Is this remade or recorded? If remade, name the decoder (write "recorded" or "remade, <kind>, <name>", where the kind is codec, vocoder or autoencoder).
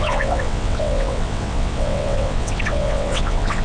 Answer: remade, vocoder, WaveNeXt